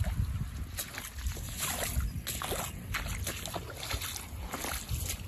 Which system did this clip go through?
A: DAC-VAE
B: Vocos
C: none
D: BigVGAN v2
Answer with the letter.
C